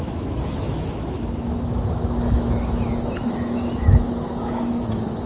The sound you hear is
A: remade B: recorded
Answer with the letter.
A